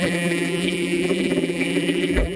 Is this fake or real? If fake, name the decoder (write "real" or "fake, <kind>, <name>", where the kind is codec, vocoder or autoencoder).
fake, vocoder, BigVGAN v2